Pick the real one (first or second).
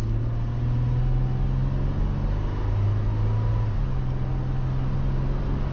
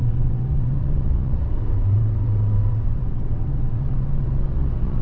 first